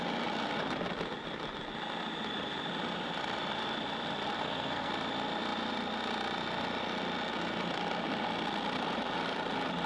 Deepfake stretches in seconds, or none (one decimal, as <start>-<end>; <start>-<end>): 4.4-4.9